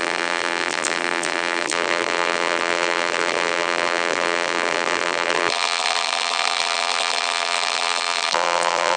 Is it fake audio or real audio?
fake